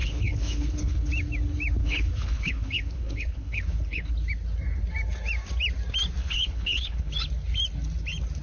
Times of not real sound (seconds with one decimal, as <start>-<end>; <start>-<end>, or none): 0.0-1.1; 1.8-4.1; 6.2-7.1

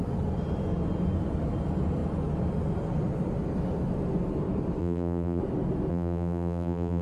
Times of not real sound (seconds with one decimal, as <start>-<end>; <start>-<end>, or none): 4.8-5.4; 5.9-7.0

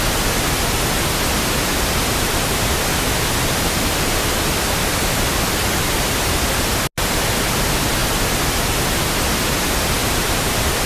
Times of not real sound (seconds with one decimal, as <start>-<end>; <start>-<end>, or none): 10.0-10.9

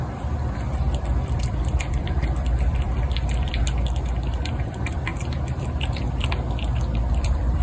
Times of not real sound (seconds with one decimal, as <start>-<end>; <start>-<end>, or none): 0.0-3.6; 4.5-5.1; 7.1-7.6